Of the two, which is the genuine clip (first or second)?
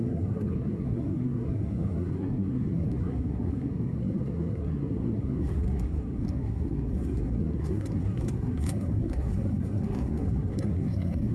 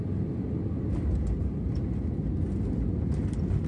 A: second